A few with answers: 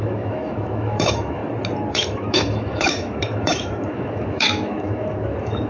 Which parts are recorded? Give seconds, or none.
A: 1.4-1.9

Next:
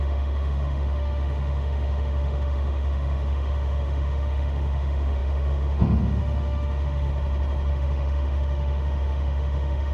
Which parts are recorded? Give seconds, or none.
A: 7.1-7.7

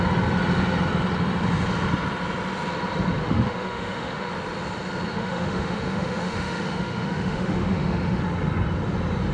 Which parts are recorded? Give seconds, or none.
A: 0.0-3.2; 4.3-5.1; 8.2-9.3

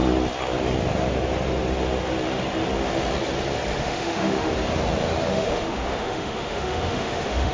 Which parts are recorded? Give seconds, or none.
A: 0.0-3.8; 4.5-5.3

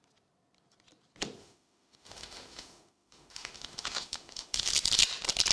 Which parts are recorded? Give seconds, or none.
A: 0.0-1.4; 4.7-5.5

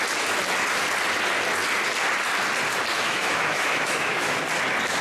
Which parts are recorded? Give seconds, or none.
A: 0.0-2.9; 4.4-5.0

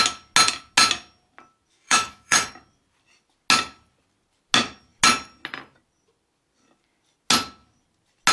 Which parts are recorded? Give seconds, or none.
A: 0.0-1.7; 2.5-8.3

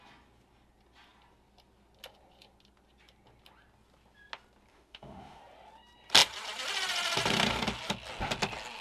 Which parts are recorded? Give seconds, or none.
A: 0.0-4.7; 5.4-8.8